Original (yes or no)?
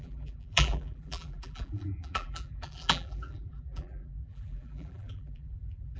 no